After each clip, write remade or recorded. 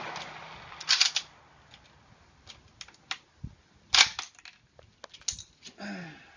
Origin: recorded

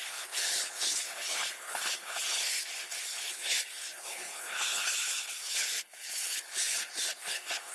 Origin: remade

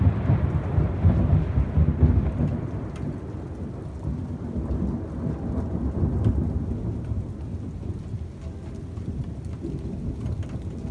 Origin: recorded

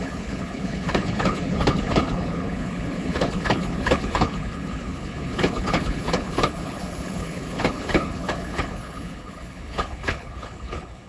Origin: remade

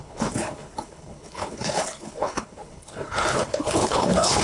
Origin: remade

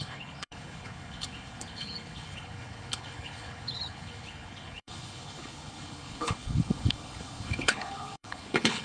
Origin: remade